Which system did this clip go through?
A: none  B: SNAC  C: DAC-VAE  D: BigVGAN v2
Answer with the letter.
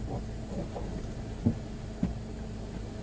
A